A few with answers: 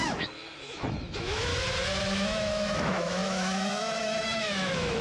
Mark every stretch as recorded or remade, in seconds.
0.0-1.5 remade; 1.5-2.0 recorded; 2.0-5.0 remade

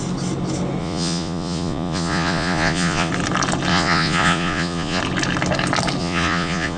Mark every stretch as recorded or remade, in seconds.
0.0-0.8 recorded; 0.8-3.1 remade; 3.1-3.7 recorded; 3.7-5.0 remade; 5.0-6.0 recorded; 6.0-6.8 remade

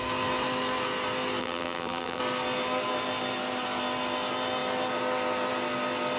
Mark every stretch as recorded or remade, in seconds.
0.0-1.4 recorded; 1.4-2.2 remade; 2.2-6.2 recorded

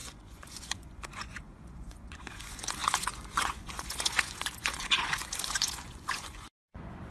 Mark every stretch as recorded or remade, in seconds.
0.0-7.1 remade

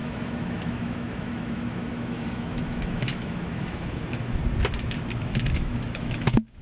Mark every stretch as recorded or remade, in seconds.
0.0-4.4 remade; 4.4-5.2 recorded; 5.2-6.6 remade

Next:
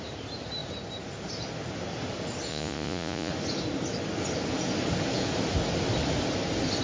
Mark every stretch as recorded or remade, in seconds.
0.0-2.5 recorded; 2.5-3.3 remade; 3.3-6.8 recorded

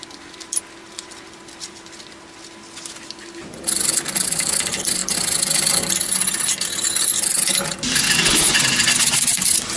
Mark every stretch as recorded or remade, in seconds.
0.0-9.8 recorded

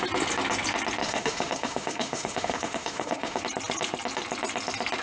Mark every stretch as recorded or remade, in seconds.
0.0-1.0 recorded; 1.0-3.4 remade; 3.4-5.0 recorded